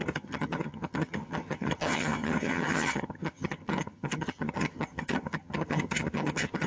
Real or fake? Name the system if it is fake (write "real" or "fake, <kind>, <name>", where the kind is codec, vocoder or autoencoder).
fake, vocoder, HiFi-GAN